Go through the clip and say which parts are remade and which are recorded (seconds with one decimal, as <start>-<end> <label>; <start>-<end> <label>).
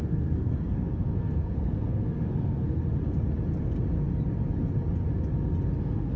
0.0-2.8 remade; 2.8-5.8 recorded; 5.8-6.2 remade